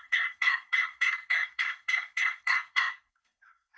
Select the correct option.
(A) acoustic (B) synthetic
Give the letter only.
B